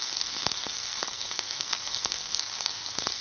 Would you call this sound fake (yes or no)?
yes